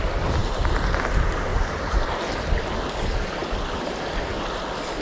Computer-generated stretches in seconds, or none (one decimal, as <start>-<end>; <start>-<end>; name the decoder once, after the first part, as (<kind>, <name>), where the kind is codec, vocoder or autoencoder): 1.5-2.2 (vocoder, BigVGAN v2)